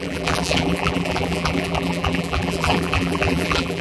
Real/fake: fake